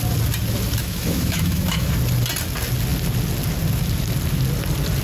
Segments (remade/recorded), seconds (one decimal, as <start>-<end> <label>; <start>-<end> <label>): 0.0-0.8 recorded; 0.8-1.9 remade; 1.9-5.0 recorded